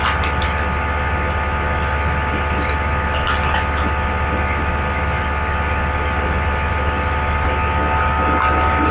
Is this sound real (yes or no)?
yes